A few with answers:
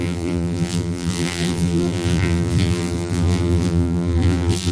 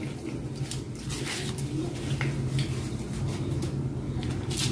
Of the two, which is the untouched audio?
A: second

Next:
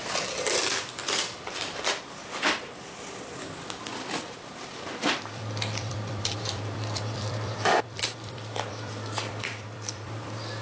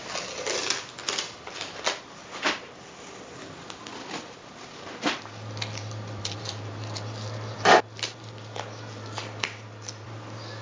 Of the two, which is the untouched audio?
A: second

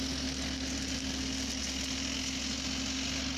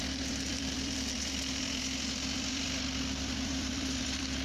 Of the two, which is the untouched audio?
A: first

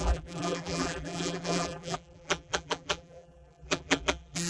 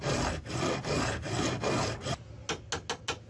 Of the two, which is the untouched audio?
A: second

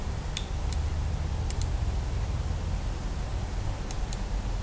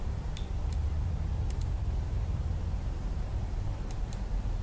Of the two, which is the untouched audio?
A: first